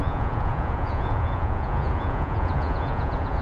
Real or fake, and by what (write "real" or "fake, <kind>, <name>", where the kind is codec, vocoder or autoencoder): fake, vocoder, Vocos